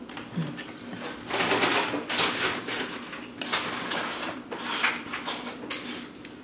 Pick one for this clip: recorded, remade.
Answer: recorded